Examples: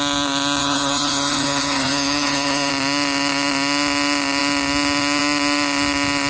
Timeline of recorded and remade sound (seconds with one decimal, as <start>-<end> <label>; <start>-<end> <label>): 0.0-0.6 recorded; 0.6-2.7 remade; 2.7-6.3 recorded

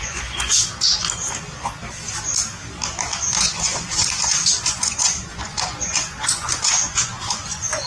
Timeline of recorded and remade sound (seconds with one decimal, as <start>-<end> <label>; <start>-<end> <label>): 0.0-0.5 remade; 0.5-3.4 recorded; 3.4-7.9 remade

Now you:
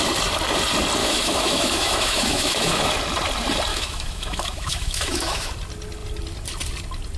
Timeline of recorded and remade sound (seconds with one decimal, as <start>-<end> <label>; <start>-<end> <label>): 0.0-1.0 recorded; 1.0-2.9 remade; 2.9-3.7 recorded; 3.7-5.5 remade; 5.5-7.2 recorded

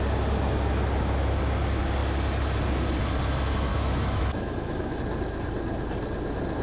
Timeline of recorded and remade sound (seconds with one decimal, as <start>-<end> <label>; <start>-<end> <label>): 0.0-3.7 recorded; 3.7-5.0 remade; 5.0-6.6 recorded

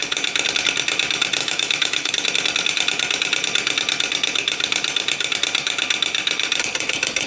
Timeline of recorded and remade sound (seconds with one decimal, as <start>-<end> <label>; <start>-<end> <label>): 0.0-1.4 recorded; 1.4-2.1 remade; 2.1-7.3 recorded

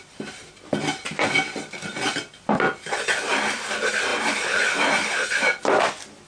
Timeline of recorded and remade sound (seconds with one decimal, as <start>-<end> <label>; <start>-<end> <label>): 0.0-6.3 recorded

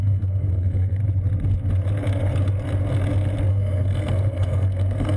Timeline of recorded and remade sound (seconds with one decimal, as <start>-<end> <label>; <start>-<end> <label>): 0.0-1.0 remade; 1.0-3.5 recorded; 3.5-5.2 remade

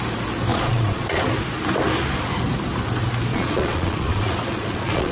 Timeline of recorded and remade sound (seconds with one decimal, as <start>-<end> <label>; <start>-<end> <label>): 0.0-0.5 recorded; 0.5-1.2 remade; 1.2-3.3 recorded; 3.3-5.1 remade